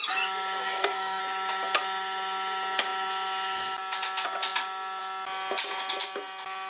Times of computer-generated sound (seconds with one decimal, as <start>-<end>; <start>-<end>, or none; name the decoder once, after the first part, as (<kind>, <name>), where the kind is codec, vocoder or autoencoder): 0.6-1.2 (codec, SNAC)